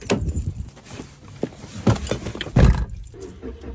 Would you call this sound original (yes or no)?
yes